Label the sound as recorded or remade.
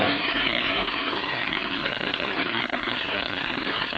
remade